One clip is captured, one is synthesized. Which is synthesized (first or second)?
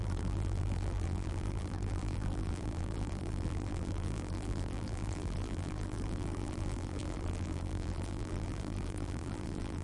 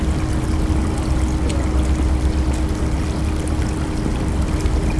first